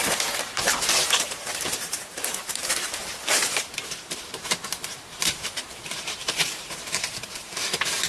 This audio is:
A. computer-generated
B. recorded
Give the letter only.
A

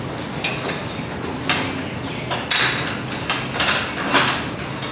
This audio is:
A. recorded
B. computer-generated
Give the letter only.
A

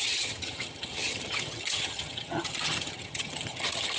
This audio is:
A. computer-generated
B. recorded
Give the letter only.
A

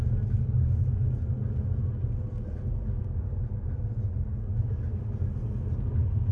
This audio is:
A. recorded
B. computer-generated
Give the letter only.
A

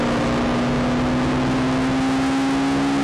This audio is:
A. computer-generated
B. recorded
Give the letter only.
B